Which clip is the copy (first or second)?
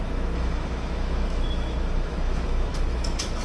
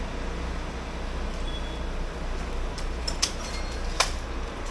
first